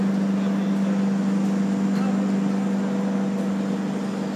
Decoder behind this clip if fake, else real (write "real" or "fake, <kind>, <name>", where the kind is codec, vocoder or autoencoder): real